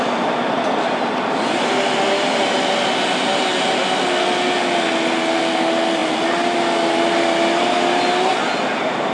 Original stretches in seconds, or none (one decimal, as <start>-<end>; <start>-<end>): 0.0-9.1

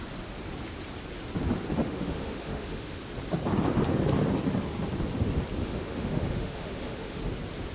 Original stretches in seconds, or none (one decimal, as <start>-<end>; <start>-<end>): 0.0-1.8; 3.0-5.6; 7.2-7.7

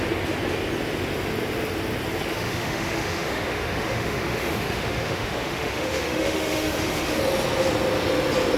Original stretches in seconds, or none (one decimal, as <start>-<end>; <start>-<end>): 0.0-2.3; 7.2-8.6

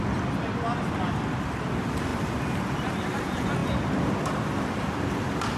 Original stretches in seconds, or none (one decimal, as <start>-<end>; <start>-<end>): 0.0-5.6

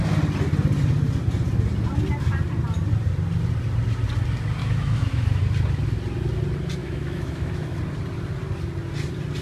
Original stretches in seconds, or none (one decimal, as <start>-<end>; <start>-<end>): 0.0-4.6; 5.4-6.8; 7.8-9.4

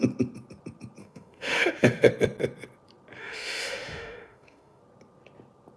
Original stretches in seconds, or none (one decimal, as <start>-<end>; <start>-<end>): 0.0-1.0; 2.1-3.2; 4.8-5.8

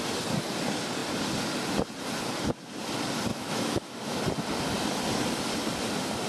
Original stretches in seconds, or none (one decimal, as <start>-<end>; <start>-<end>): 0.0-3.3; 4.2-6.3

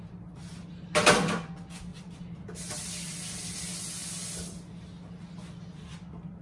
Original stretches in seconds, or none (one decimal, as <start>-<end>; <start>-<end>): 0.0-6.4